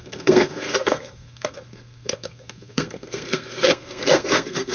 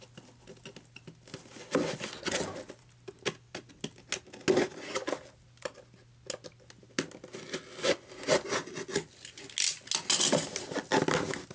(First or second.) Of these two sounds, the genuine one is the second